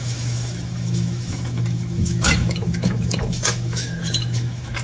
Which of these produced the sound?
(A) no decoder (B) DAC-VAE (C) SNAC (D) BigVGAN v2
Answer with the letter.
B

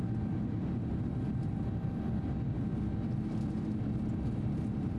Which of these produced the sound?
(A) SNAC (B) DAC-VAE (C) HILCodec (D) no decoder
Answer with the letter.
D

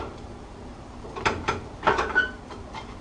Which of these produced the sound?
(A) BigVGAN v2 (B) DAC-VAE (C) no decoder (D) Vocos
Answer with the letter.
A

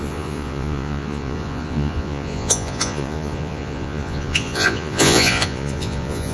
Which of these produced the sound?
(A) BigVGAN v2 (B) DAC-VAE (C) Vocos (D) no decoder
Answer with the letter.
C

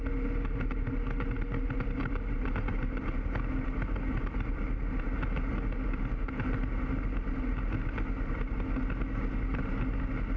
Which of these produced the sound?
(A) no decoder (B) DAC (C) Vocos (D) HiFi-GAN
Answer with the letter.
A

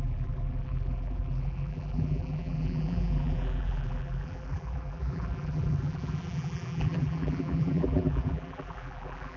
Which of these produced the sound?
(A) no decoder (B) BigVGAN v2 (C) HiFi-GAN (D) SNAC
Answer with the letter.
B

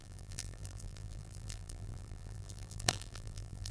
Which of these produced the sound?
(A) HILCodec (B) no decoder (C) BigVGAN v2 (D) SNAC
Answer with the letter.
C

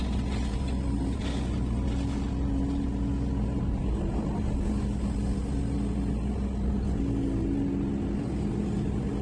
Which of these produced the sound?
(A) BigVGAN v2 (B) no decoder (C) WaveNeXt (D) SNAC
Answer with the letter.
B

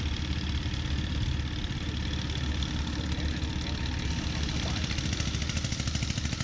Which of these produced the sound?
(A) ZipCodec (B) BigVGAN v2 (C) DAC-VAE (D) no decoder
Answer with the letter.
D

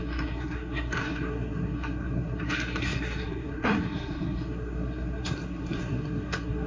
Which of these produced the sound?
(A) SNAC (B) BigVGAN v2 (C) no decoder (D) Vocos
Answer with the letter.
A